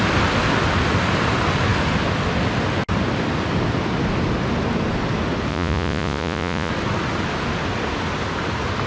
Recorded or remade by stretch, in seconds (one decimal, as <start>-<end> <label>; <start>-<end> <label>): 0.0-5.5 recorded; 5.5-6.7 remade; 6.7-8.9 recorded